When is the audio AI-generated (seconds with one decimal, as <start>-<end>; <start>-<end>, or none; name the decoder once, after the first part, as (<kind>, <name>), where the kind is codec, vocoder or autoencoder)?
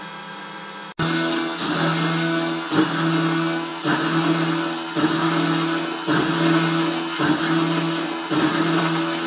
none